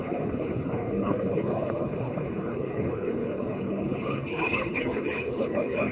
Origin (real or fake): fake